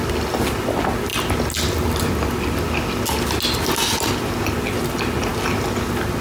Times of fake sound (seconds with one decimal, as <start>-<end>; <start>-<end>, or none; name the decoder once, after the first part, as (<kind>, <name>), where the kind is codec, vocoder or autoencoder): none